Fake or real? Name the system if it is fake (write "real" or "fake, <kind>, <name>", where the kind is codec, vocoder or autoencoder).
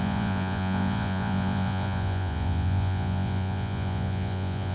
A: fake, vocoder, Vocos